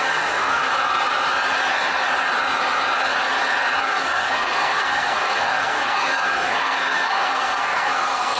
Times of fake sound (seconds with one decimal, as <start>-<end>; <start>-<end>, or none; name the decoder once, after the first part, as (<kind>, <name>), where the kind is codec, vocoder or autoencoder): 0.0-0.7 (codec, SNAC); 3.8-8.4